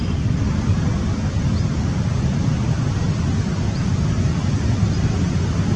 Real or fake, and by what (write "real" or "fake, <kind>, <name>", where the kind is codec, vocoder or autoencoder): real